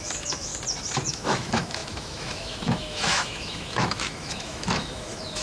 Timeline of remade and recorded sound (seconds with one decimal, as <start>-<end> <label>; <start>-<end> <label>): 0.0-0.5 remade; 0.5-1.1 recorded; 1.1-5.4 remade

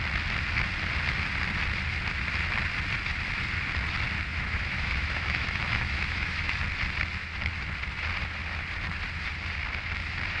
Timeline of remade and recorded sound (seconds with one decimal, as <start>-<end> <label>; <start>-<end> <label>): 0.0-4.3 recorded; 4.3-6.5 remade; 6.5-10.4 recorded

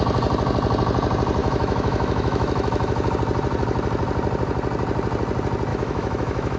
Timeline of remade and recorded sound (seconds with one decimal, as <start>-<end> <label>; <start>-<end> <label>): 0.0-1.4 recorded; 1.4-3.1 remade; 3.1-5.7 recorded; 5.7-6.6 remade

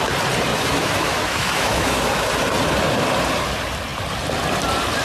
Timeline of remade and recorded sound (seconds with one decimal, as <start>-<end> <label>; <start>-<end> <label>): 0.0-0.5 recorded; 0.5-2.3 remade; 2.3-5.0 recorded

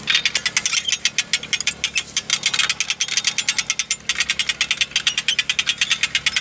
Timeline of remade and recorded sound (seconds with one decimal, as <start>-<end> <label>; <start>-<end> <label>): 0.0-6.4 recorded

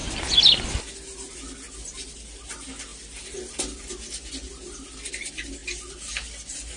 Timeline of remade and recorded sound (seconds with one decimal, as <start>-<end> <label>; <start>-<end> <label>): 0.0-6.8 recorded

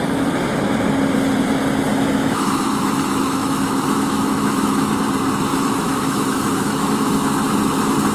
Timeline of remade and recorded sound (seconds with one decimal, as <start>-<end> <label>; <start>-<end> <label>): 0.0-1.9 recorded; 1.9-4.9 remade; 4.9-5.5 recorded; 5.5-7.1 remade; 7.1-8.1 recorded